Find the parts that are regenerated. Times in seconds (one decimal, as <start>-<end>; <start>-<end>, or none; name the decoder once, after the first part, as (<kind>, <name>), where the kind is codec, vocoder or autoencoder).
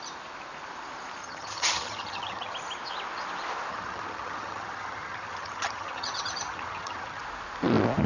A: 1.2-2.5 (vocoder, HiFi-GAN); 3.7-7.2